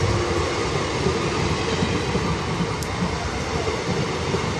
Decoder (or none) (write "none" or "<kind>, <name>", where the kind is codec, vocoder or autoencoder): none